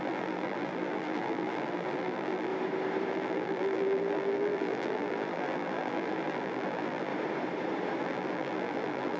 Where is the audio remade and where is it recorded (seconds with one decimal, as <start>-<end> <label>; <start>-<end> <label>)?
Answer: 0.0-2.5 remade; 2.5-3.1 recorded; 3.1-7.1 remade; 7.1-8.0 recorded; 8.0-9.2 remade